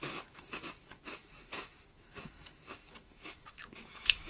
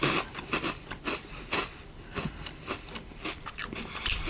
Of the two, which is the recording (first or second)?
second